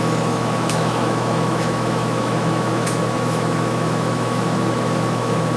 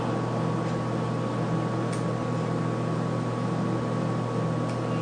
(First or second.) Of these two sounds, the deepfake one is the first